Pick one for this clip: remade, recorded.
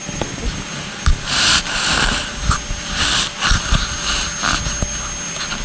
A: recorded